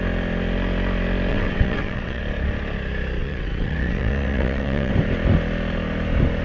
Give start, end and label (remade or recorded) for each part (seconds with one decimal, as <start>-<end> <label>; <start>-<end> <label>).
0.0-1.3 recorded; 1.3-2.2 remade; 2.2-3.2 recorded; 3.2-4.9 remade; 4.9-6.4 recorded